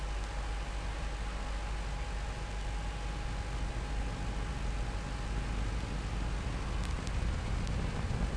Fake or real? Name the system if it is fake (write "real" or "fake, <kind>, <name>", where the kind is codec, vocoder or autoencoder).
real